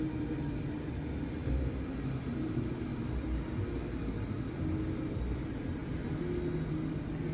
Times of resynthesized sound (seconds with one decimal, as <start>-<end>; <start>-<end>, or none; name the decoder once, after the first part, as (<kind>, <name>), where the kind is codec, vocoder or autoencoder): none